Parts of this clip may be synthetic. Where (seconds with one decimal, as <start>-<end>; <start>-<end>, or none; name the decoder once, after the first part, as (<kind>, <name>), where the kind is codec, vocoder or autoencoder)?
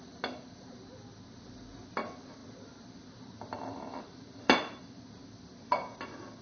none